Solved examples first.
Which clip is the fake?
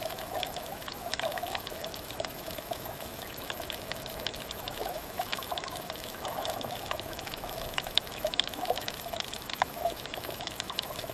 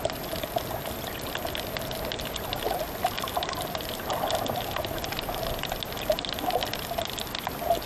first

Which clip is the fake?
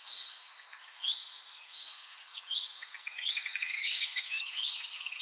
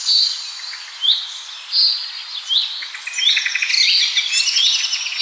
first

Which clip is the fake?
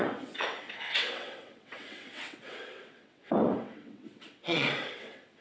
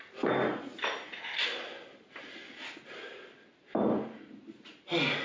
first